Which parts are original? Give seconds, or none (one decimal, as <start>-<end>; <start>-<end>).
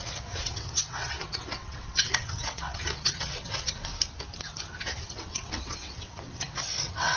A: 3.9-4.8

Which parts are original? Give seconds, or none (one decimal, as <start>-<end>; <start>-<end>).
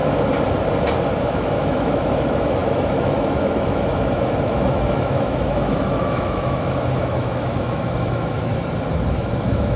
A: 0.0-1.2; 8.5-9.1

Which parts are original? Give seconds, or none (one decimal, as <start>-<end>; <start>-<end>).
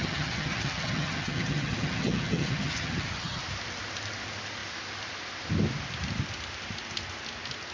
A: 3.4-7.7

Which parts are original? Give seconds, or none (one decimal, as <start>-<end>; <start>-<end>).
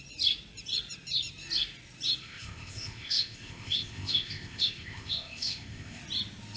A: 0.0-2.2; 6.0-6.6